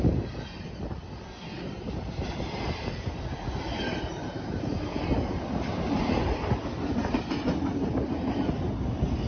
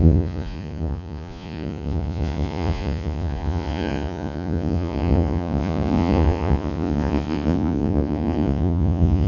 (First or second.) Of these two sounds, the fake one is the second